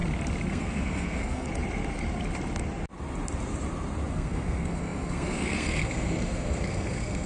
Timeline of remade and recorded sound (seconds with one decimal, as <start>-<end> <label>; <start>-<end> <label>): 0.0-0.5 recorded; 0.5-1.5 remade; 1.5-4.1 recorded; 4.1-7.3 remade